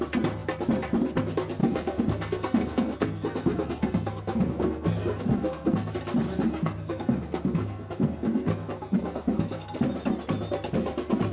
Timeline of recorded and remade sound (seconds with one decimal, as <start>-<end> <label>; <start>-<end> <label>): 0.0-1.6 recorded; 1.6-5.9 remade; 5.9-6.5 recorded; 6.5-9.8 remade; 9.8-11.3 recorded

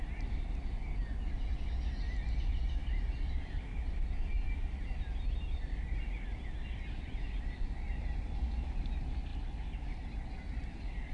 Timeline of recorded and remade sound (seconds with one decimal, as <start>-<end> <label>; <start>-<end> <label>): 0.0-11.1 recorded

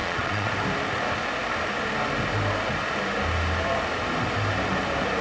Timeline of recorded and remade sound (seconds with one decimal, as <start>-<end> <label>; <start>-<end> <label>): 0.0-0.5 remade; 0.5-5.2 recorded

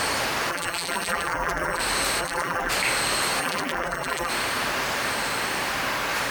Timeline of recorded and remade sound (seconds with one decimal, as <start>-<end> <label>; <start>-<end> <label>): 0.0-0.5 recorded; 0.5-1.8 remade; 1.8-2.2 recorded; 2.2-2.7 remade; 2.7-3.4 recorded; 3.4-4.3 remade; 4.3-6.3 recorded

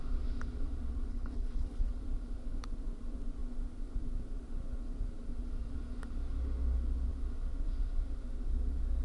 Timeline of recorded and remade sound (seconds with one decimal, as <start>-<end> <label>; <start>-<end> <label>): 0.0-1.1 recorded; 1.1-1.9 remade; 1.9-9.0 recorded

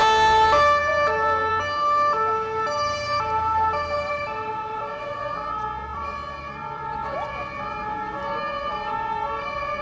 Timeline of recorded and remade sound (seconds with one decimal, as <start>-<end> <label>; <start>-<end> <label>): 0.0-5.9 recorded; 5.9-7.3 remade; 7.3-9.8 recorded